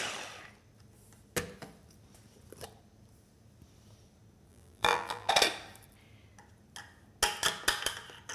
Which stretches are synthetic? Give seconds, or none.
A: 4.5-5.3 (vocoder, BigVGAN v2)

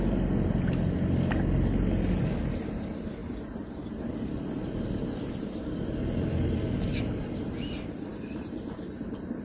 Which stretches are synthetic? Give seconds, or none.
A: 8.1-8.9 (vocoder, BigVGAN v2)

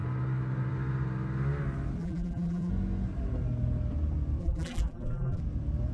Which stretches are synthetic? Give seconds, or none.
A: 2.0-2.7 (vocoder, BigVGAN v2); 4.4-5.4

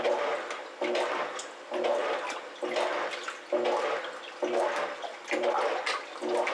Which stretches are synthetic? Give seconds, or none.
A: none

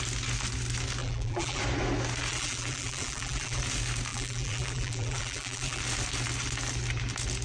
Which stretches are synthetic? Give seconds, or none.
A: 1.0-1.6 (vocoder, BigVGAN v2); 2.3-3.6; 4.1-5.8

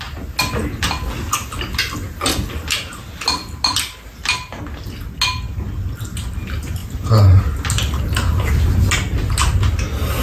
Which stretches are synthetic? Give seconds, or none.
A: 6.8-7.4 (vocoder, BigVGAN v2)

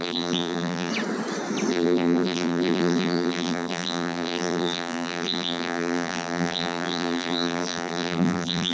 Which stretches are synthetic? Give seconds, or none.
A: 0.0-0.9 (vocoder, BigVGAN v2); 1.7-8.7